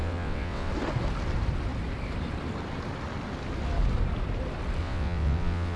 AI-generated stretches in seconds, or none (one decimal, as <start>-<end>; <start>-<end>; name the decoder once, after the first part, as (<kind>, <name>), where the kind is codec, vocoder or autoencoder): 0.0-0.7 (vocoder, WaveNeXt); 4.8-5.8